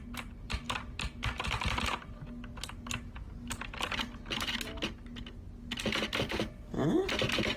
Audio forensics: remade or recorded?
recorded